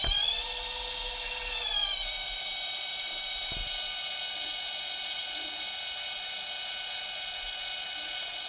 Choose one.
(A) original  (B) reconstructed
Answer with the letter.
A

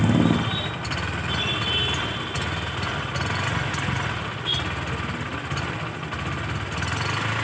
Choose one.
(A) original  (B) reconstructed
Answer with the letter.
A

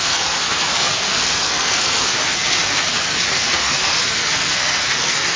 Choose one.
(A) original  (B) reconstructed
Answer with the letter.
B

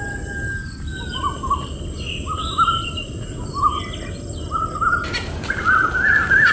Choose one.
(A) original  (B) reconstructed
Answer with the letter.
A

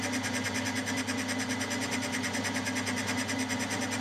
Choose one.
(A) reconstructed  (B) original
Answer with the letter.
B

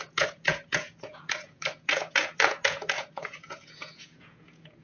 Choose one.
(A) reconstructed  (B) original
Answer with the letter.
A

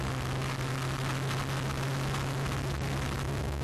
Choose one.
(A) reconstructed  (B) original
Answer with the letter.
B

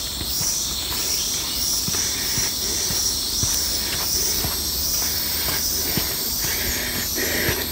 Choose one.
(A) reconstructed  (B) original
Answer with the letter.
B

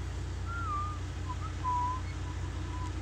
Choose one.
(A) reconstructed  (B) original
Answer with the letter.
B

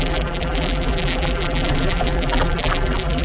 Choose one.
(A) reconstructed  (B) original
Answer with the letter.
A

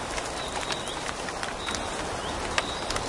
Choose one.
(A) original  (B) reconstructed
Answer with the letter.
A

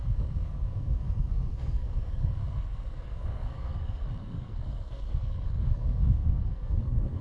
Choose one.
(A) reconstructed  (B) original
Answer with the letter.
A